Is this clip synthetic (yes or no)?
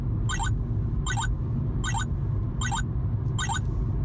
no